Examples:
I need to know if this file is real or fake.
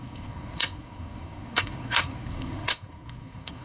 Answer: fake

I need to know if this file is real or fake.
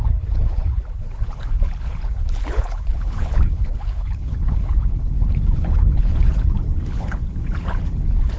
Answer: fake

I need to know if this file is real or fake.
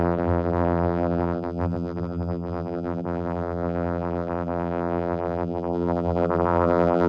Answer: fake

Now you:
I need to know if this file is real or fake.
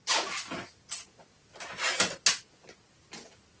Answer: real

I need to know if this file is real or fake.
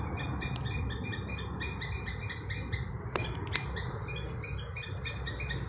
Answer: real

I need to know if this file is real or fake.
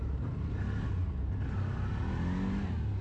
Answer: real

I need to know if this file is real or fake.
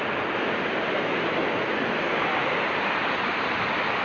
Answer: real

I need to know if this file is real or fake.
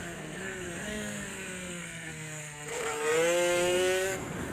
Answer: fake